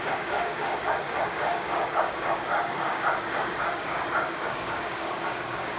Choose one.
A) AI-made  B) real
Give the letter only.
A